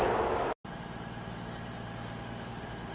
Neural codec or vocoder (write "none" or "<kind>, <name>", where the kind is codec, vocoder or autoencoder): none